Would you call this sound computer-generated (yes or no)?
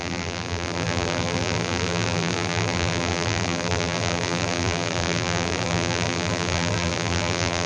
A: yes